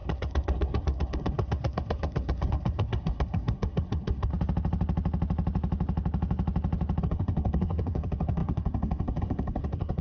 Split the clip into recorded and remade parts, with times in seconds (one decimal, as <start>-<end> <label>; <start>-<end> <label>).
0.0-4.3 remade; 4.3-7.0 recorded; 7.0-10.0 remade